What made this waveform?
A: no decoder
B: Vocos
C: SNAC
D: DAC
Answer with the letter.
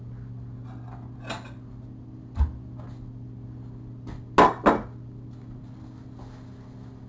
A